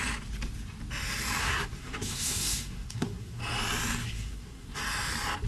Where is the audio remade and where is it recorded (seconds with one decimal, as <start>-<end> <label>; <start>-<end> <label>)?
0.0-1.4 recorded; 1.4-3.4 remade; 3.4-4.0 recorded; 4.0-4.8 remade; 4.8-5.5 recorded